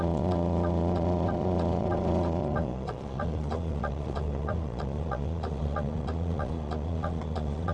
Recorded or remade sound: remade